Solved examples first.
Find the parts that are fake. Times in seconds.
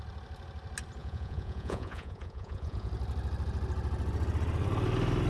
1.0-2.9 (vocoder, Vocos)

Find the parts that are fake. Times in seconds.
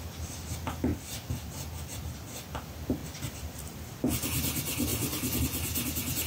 none